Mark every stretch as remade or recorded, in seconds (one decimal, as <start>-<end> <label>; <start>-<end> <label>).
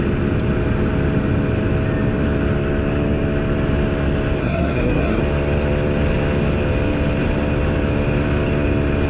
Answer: 0.0-4.4 recorded; 4.4-5.2 remade; 5.2-9.1 recorded